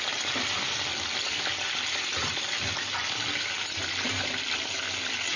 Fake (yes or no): no